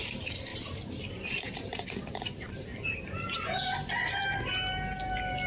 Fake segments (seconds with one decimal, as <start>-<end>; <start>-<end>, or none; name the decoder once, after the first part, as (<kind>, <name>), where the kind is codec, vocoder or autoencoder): 0.0-0.5 (vocoder, BigVGAN v2); 1.3-2.7